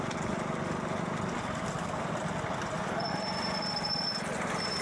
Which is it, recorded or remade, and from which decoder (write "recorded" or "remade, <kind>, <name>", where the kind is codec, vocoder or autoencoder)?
recorded